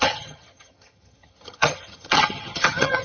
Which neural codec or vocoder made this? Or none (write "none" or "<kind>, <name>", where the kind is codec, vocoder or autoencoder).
vocoder, HiFi-GAN